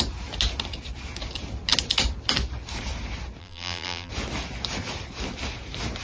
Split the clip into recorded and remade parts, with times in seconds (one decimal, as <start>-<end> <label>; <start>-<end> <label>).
0.0-3.4 recorded; 3.4-4.1 remade; 4.1-6.0 recorded